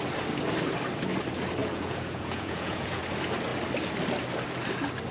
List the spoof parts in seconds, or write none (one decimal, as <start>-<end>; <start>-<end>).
1.6-3.0